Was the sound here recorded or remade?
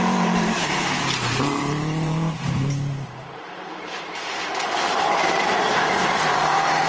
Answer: remade